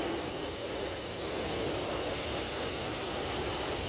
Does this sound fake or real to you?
real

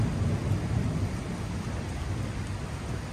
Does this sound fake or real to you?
real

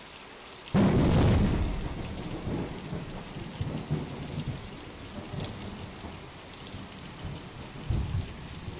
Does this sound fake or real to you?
real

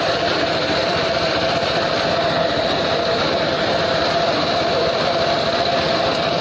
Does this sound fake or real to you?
fake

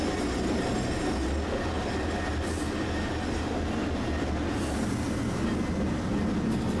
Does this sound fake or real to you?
real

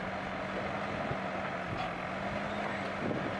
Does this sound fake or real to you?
real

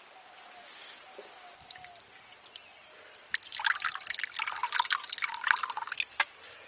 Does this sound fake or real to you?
real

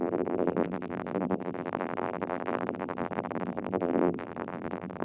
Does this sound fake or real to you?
fake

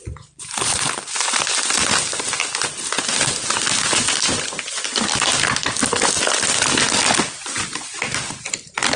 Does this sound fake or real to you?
real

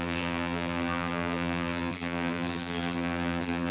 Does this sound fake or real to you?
fake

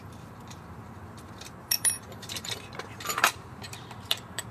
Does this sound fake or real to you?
fake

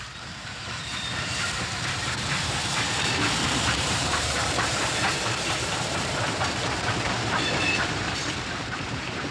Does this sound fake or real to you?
fake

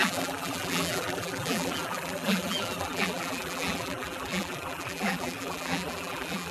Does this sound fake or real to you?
fake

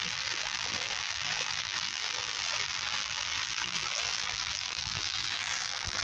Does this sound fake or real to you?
fake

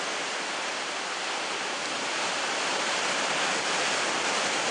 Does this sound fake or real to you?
fake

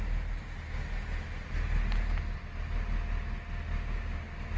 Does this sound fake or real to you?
real